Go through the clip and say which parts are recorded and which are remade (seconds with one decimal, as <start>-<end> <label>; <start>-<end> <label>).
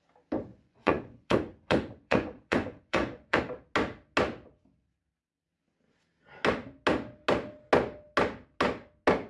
0.0-0.5 recorded; 0.5-3.4 remade; 3.4-9.3 recorded